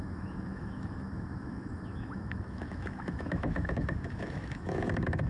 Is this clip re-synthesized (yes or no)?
yes